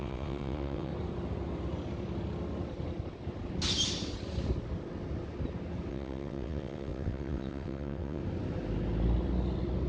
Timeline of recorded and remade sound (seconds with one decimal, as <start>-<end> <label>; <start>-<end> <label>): 0.0-0.9 remade; 0.9-5.9 recorded; 5.9-8.2 remade; 8.2-9.9 recorded